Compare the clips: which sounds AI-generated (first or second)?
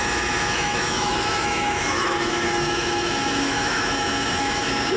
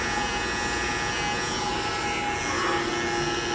first